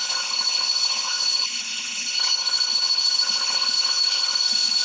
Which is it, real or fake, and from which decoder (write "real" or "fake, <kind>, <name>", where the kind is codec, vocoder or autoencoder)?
fake, codec, HILCodec